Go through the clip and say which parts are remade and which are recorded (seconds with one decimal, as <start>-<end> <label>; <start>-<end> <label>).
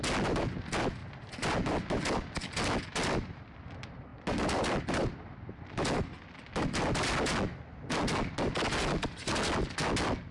0.0-10.3 recorded